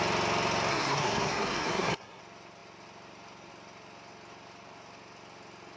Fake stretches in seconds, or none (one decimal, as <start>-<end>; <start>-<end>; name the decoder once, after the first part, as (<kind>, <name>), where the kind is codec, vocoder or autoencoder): 0.7-2.2 (codec, SNAC)